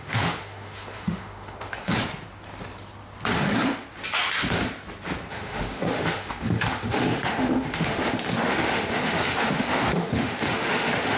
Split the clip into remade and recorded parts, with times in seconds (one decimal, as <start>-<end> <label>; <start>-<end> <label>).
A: 0.0-1.9 remade; 1.9-5.3 recorded; 5.3-11.2 remade